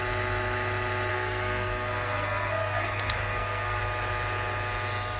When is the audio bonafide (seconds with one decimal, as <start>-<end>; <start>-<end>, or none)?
0.0-1.1; 3.8-5.2